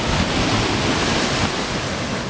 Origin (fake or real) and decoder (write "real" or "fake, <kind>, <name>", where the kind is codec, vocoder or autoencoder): real